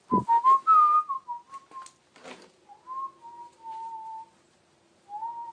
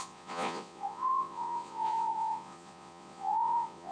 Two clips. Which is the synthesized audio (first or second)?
second